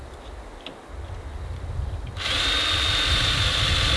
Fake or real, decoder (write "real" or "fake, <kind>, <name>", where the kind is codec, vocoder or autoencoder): real